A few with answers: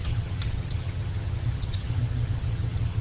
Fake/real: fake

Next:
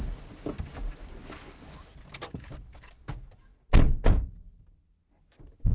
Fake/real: real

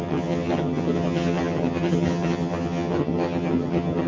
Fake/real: fake